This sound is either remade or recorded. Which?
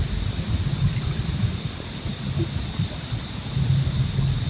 recorded